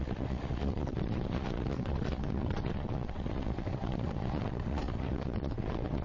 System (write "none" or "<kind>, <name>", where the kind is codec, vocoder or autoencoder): vocoder, WaveNeXt